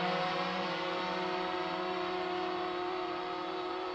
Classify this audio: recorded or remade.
remade